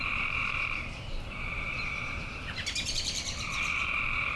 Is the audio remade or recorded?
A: remade